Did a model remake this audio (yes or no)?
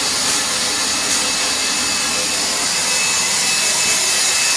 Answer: no